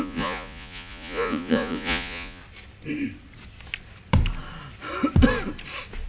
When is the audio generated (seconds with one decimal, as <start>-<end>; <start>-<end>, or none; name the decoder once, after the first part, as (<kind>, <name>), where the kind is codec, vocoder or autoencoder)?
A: 0.0-2.4 (vocoder, Vocos)